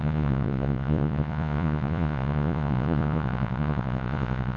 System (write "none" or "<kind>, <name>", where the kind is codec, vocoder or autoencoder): vocoder, Vocos